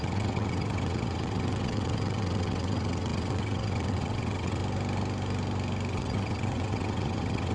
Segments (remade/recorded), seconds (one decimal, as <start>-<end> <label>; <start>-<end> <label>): 0.0-4.6 remade; 4.6-5.9 recorded; 5.9-7.5 remade